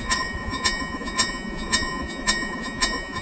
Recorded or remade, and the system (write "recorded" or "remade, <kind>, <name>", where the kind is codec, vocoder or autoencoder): remade, vocoder, Vocos